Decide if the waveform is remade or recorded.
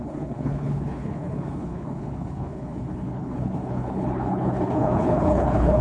remade